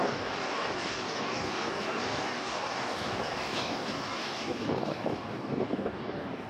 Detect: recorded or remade remade